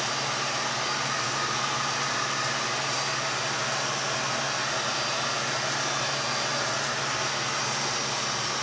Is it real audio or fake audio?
real